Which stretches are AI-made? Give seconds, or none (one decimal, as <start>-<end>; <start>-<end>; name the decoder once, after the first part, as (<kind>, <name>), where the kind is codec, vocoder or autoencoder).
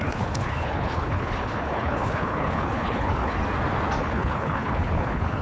0.0-3.4 (codec, HILCodec); 4.0-5.4